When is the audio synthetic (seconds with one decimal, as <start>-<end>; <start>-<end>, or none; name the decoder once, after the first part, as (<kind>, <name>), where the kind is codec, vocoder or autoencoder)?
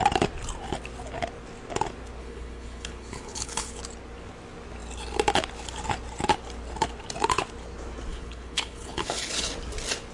2.2-3.8 (codec, HILCodec); 8.1-9.5